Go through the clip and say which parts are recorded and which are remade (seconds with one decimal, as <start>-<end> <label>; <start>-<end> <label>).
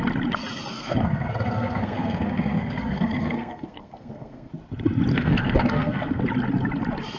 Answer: 0.0-0.7 recorded; 0.7-4.5 remade; 4.5-5.1 recorded; 5.1-6.2 remade; 6.2-7.2 recorded